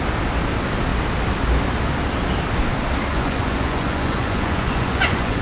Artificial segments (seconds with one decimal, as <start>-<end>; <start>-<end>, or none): 3.1-5.4